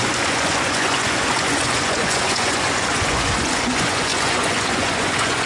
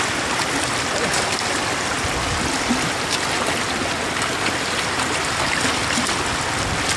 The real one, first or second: second